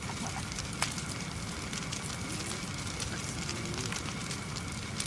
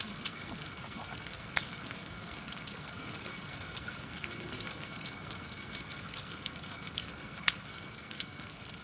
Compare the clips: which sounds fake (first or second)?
second